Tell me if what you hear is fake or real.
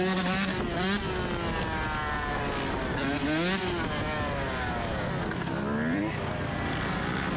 real